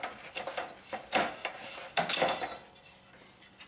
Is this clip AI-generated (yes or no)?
no